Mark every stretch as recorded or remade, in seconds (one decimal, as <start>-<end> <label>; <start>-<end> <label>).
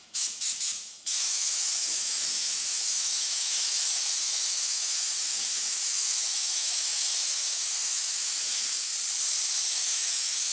0.0-8.9 remade; 8.9-9.7 recorded; 9.7-10.5 remade